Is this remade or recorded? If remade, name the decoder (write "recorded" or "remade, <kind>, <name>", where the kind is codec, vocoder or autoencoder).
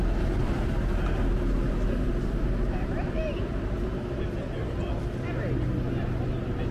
recorded